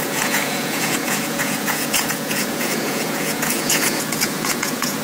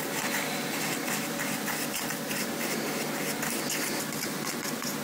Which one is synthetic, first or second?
first